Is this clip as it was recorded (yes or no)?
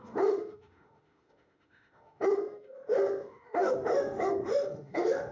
no